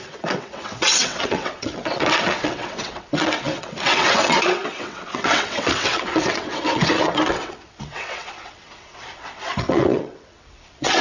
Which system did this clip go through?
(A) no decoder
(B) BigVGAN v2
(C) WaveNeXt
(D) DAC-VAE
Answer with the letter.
C